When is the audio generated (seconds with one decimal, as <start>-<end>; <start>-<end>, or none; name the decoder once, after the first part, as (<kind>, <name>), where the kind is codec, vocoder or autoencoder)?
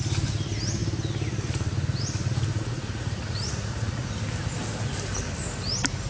2.5-4.1 (vocoder, Vocos)